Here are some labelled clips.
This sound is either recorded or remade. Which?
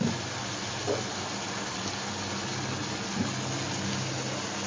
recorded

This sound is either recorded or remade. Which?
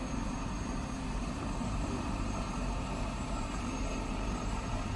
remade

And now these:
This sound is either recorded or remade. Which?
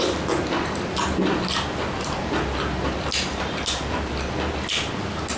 recorded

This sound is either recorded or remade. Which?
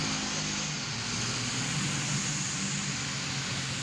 recorded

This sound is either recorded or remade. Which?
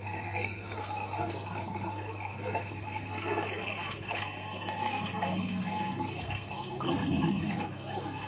remade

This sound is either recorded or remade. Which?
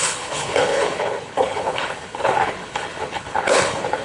remade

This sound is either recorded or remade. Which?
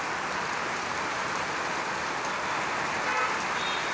recorded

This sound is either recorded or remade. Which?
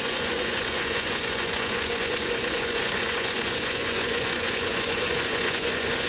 remade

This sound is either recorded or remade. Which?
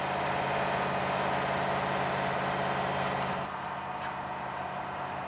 recorded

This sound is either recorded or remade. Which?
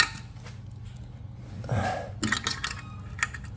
recorded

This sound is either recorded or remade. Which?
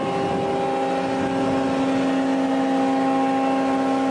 recorded